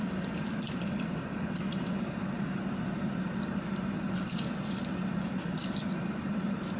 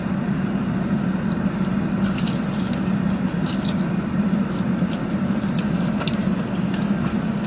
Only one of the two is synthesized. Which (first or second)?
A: first